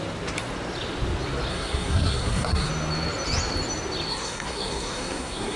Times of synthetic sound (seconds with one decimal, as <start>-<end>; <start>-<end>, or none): 1.5-2.7; 4.1-5.6